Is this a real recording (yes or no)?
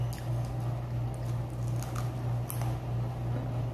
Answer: yes